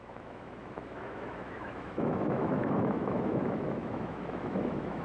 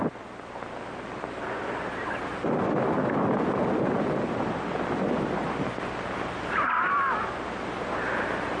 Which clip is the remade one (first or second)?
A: first